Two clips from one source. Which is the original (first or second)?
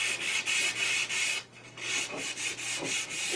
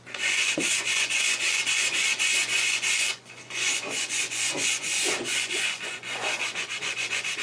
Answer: first